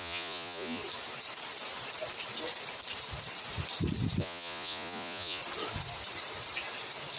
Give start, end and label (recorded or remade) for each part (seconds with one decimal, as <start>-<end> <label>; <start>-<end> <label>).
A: 0.0-0.8 remade; 0.8-4.2 recorded; 4.2-5.4 remade; 5.4-7.2 recorded